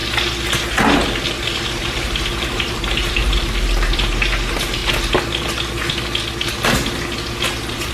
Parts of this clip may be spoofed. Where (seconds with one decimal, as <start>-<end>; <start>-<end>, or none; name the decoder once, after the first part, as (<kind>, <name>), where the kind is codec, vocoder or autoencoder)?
1.7-4.8 (vocoder, BigVGAN v2)